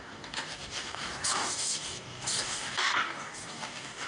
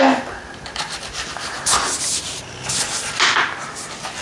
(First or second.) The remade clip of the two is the first